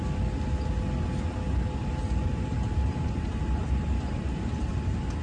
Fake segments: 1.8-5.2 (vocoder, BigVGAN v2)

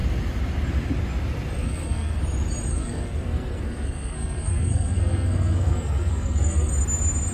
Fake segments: 1.6-2.2 (codec, SNAC); 2.7-6.7

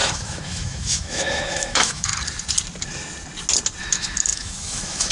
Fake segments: 0.0-2.1 (autoencoder, DAC-VAE); 3.8-5.1

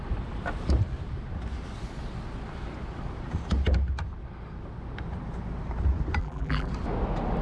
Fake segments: 6.2-6.7 (vocoder, BigVGAN v2)

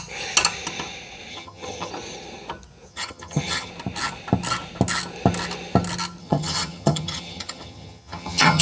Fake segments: 1.3-1.9 (vocoder, HiFi-GAN); 2.9-3.7; 6.2-8.6

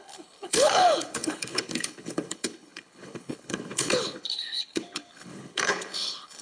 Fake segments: 0.0-6.4 (codec, HILCodec)

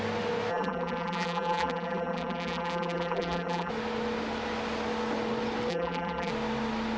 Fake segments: 0.5-3.7 (vocoder, BigVGAN v2); 5.7-6.3